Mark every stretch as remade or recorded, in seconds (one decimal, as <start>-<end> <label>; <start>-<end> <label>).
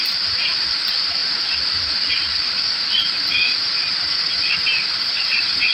0.0-1.2 remade; 1.2-4.2 recorded; 4.2-5.7 remade